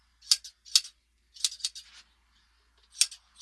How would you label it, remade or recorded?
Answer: recorded